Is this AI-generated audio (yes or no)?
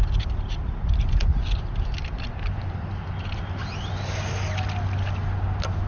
no